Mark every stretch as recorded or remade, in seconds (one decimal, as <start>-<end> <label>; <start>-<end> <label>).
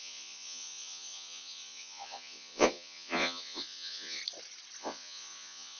0.0-4.2 remade; 4.2-4.8 recorded; 4.8-5.8 remade